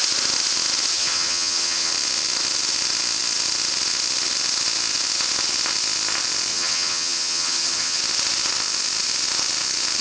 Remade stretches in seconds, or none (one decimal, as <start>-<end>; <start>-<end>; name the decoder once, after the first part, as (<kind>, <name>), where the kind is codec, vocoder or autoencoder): 0.9-1.9 (vocoder, HiFi-GAN); 6.5-8.0